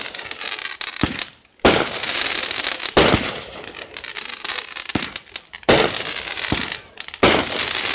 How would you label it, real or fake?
real